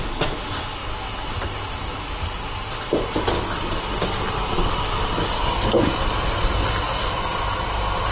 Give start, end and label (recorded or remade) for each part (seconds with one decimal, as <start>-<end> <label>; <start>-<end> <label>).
0.0-8.1 recorded